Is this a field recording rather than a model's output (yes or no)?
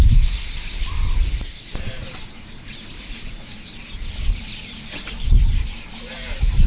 yes